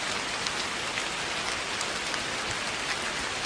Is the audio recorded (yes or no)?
yes